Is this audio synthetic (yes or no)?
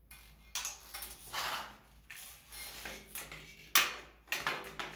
no